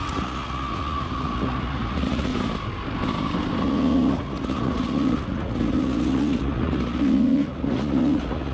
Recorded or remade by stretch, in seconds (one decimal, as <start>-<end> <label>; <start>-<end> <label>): 0.0-2.3 remade; 2.3-3.6 recorded; 3.6-8.5 remade